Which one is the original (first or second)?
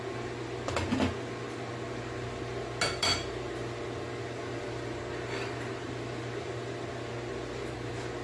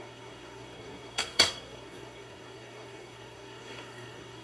first